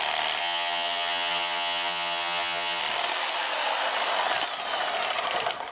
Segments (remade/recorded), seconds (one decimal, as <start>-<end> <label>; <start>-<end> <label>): 0.0-0.4 recorded; 0.4-2.8 remade; 2.8-5.7 recorded